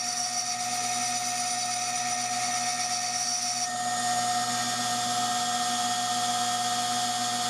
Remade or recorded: recorded